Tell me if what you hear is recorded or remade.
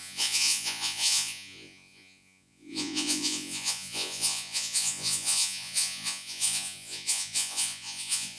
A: remade